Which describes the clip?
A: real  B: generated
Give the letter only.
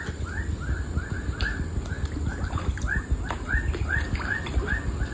A